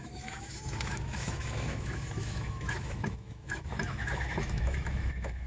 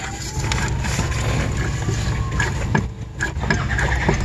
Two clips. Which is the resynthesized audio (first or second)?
first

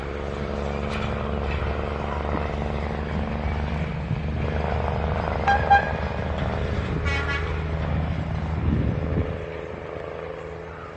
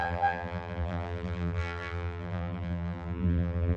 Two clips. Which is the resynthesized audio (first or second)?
second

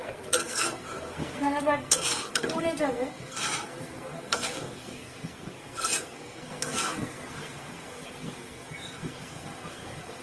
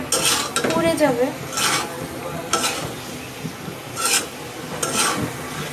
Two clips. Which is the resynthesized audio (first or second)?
first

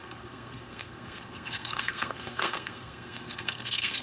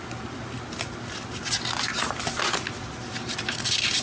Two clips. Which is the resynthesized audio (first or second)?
first